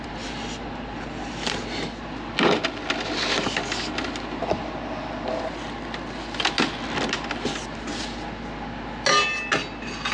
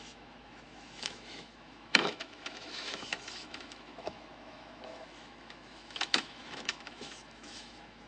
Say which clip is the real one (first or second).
first